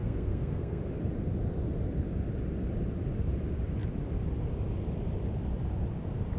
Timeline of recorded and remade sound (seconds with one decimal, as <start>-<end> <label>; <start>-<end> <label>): 0.0-0.8 remade; 0.8-6.4 recorded